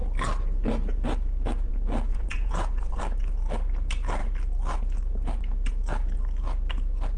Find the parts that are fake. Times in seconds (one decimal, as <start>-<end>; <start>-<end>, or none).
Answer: 2.1-3.0